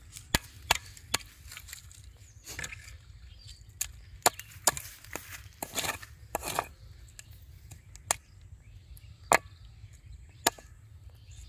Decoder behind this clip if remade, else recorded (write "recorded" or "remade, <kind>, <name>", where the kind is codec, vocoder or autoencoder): recorded